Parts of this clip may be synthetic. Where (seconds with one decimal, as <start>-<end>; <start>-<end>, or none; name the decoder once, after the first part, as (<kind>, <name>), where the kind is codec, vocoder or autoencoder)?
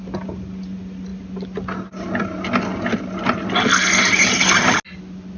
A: none